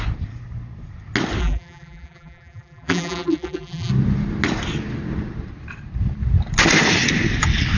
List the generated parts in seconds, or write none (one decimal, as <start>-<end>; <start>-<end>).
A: 1.4-3.9